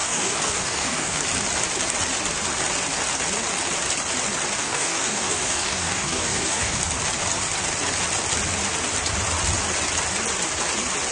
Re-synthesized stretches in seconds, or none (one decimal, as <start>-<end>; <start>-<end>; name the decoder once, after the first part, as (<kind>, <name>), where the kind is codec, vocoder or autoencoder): 0.0-1.2 (codec, DAC); 4.6-6.8